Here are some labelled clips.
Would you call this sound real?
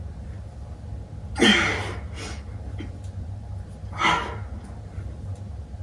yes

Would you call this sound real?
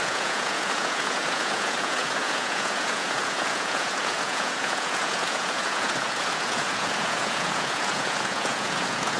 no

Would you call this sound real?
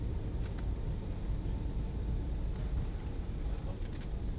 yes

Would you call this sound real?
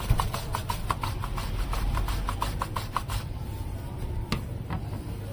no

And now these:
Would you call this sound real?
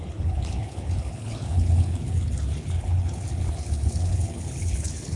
no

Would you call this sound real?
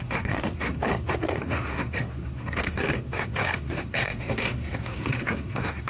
no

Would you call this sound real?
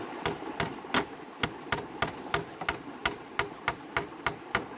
yes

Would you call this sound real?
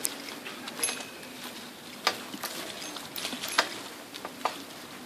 yes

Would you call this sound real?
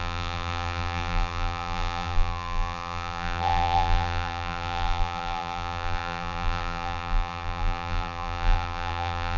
no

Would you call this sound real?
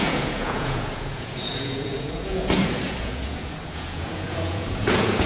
no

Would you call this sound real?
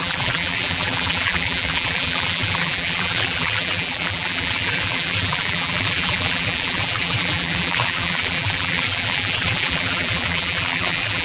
no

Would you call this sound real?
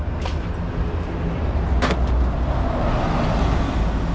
yes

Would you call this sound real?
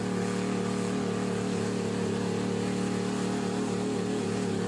yes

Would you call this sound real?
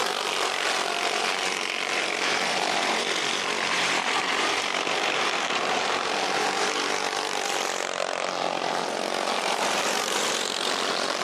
no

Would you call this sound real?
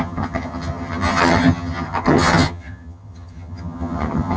no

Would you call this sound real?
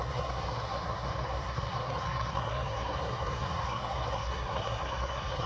no